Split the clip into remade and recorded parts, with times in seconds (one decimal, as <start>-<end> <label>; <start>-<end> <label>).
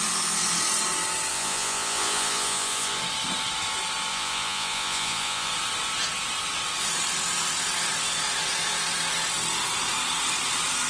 0.0-1.3 recorded; 1.3-3.0 remade; 3.0-4.1 recorded; 4.1-5.5 remade; 5.5-10.9 recorded